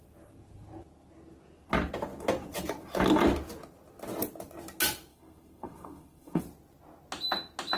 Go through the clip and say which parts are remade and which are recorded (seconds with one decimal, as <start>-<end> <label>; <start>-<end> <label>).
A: 0.0-5.1 recorded; 5.1-6.4 remade; 6.4-7.8 recorded